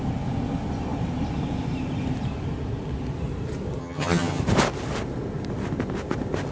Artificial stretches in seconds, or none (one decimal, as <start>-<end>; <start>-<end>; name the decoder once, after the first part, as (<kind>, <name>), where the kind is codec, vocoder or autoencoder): 3.8-4.4 (vocoder, HiFi-GAN)